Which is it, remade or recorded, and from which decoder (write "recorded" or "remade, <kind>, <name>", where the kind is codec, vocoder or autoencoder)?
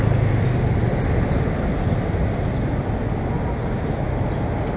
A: recorded